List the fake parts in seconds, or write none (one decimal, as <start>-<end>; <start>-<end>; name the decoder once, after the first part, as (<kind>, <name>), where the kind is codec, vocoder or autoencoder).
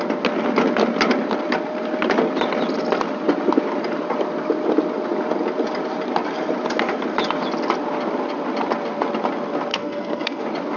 9.7-10.4 (codec, SNAC)